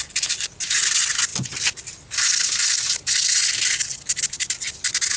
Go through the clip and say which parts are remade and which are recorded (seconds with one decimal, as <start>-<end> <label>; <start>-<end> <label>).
0.0-5.2 recorded